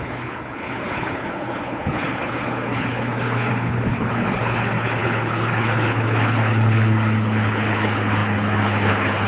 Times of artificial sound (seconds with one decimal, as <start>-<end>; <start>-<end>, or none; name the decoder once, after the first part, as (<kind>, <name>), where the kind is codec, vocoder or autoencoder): 0.0-9.3 (codec, HILCodec)